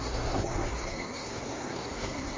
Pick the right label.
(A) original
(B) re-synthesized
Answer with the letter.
B